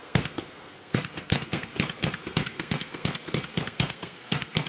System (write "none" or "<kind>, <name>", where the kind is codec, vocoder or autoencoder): codec, SNAC